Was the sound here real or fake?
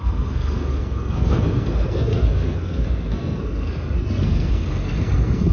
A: fake